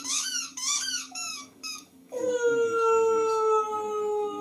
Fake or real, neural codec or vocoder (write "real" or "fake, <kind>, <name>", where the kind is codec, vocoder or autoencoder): fake, codec, DAC